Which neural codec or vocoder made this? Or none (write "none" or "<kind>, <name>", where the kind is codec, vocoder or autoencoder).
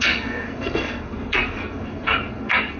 codec, SNAC